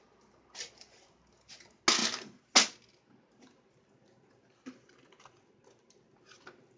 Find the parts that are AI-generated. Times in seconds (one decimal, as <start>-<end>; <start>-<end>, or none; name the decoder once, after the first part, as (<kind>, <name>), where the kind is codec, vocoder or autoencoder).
none